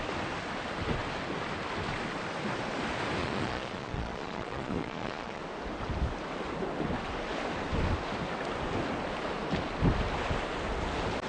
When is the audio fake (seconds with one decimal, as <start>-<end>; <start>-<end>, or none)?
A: 3.2-5.4